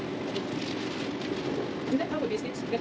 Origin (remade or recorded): recorded